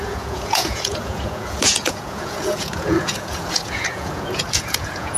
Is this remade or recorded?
remade